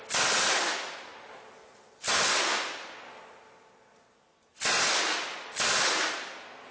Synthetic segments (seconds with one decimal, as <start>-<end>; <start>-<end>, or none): none